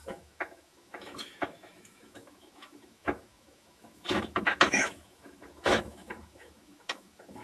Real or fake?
fake